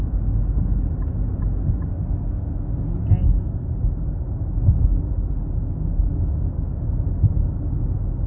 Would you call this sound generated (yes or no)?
no